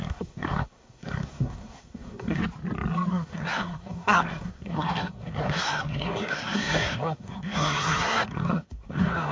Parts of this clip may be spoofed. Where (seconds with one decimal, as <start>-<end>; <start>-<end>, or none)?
0.0-2.4; 3.1-9.3

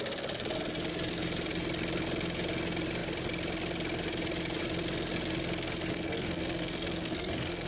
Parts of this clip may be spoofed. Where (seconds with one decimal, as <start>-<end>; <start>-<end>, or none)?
5.9-7.7

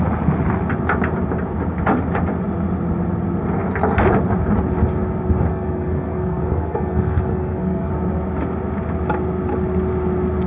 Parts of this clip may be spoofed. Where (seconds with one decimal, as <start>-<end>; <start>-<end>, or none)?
5.5-7.9

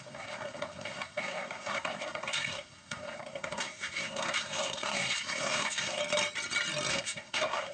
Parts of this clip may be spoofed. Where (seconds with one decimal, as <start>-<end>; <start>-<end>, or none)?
0.0-6.0; 6.9-7.7

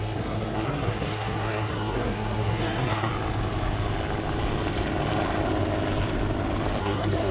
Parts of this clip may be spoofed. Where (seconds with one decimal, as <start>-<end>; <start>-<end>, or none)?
0.0-3.1; 6.8-7.3